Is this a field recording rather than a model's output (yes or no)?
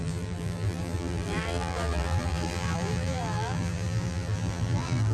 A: no